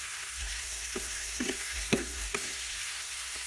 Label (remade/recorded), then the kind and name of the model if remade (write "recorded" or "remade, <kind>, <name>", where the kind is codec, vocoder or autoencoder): remade, codec, SNAC